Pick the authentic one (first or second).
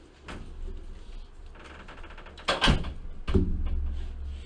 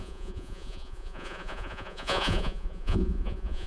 first